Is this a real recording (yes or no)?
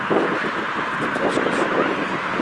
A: no